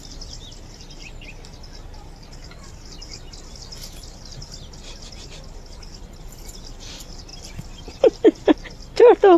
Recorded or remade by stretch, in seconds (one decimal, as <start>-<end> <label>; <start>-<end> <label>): 0.0-7.3 recorded; 7.3-8.6 remade; 8.6-9.4 recorded